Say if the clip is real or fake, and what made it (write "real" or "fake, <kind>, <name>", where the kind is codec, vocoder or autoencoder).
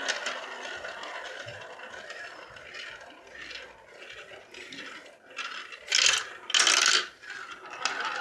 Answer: real